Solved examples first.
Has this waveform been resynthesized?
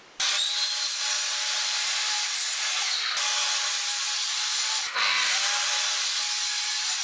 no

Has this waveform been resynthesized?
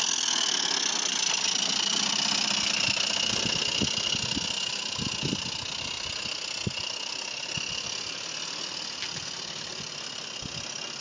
no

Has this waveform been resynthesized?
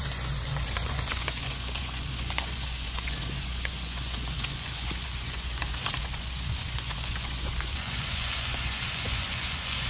yes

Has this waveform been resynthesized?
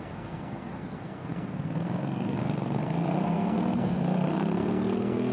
yes